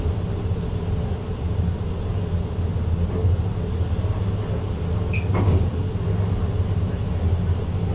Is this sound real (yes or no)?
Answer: yes